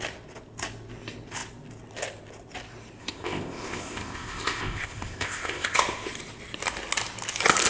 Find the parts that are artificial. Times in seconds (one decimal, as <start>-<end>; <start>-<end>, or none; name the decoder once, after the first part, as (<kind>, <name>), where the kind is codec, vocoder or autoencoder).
3.0-5.8 (codec, ZipCodec)